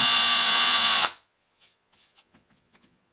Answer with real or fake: fake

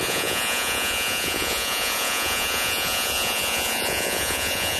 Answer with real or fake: fake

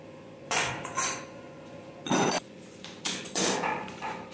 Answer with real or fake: fake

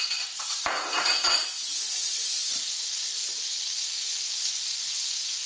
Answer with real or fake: fake